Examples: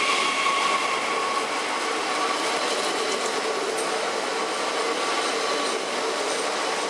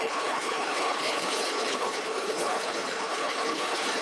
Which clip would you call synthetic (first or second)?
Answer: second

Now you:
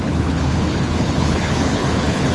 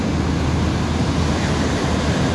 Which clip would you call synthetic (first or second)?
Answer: first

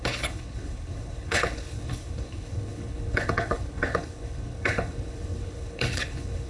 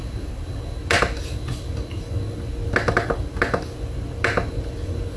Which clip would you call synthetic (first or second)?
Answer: first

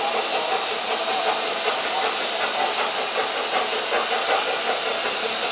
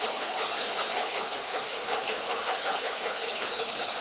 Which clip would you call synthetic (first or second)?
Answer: second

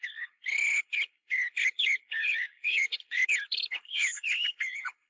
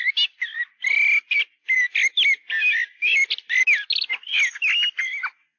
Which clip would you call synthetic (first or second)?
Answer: first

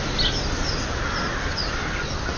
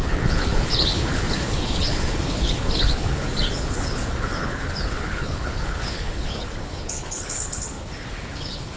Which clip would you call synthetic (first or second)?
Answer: second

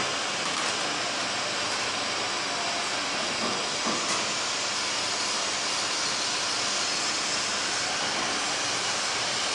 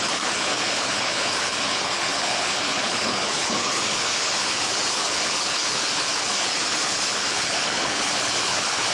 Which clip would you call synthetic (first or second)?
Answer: second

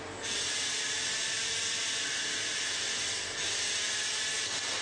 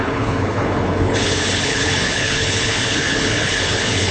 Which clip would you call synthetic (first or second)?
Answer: second